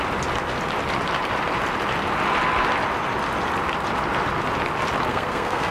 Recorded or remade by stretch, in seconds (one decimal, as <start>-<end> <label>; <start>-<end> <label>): 0.0-5.1 recorded; 5.1-5.7 remade

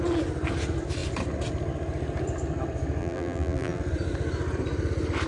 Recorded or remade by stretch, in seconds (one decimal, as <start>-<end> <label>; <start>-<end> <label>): 0.0-3.0 recorded; 3.0-3.8 remade; 3.8-5.3 recorded